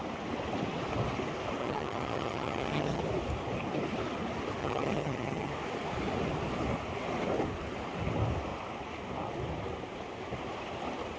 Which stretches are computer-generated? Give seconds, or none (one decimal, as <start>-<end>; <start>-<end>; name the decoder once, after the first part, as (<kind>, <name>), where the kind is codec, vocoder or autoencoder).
1.6-3.0 (vocoder, HiFi-GAN); 4.6-5.5